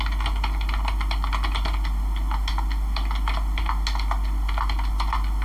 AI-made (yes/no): no